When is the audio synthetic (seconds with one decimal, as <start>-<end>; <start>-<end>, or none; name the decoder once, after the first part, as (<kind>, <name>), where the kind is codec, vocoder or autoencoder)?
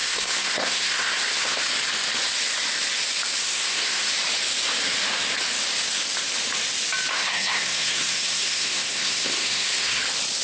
0.0-1.6 (codec, SNAC); 3.4-4.1; 7.1-10.0